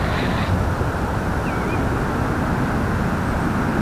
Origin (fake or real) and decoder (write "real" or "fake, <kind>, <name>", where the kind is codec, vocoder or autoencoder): real